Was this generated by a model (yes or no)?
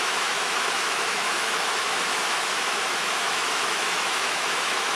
yes